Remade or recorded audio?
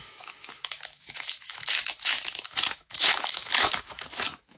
remade